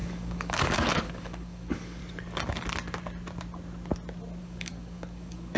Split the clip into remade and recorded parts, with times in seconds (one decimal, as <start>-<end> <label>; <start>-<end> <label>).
0.0-2.0 remade; 2.0-4.4 recorded; 4.4-5.6 remade